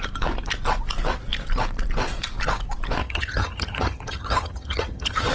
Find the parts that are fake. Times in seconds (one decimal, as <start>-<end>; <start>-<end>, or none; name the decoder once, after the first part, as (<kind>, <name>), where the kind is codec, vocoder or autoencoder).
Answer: 3.0-5.3 (vocoder, HiFi-GAN)

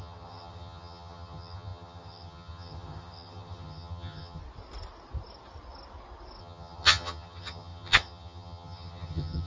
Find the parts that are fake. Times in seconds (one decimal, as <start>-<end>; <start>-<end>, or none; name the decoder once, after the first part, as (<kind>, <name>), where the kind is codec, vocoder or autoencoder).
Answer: 0.0-4.4 (vocoder, HiFi-GAN); 6.4-9.5

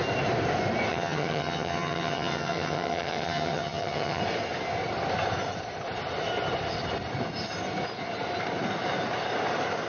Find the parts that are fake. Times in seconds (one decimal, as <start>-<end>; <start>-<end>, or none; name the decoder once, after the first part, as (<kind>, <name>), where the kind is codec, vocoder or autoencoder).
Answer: 0.9-4.2 (vocoder, HiFi-GAN)

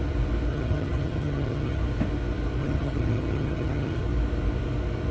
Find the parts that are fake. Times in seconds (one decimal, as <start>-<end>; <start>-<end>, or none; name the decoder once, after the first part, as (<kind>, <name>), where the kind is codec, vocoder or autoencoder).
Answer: 0.5-1.8 (vocoder, HiFi-GAN); 2.6-4.0